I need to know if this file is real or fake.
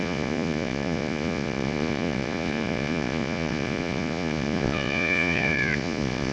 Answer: fake